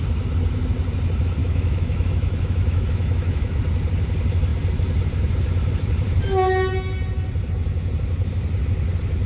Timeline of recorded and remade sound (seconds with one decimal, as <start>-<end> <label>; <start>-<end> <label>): 0.0-1.4 recorded; 1.4-3.6 remade; 3.6-9.3 recorded